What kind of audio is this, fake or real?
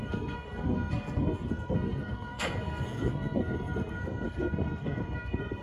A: fake